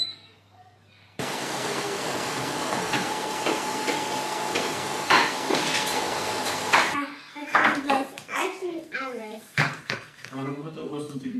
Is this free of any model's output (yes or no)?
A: no